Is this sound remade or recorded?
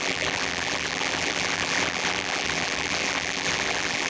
remade